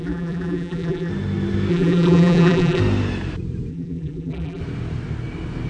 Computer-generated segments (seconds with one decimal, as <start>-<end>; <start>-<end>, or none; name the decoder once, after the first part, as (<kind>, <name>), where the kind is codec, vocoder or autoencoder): 0.0-1.1 (vocoder, BigVGAN v2); 1.7-2.8; 3.7-4.6